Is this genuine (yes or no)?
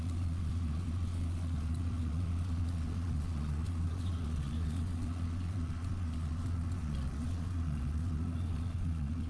no